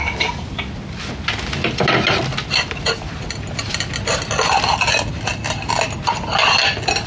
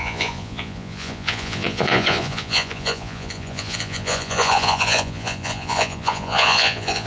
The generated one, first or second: second